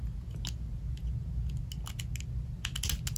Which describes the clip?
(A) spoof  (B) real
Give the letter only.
B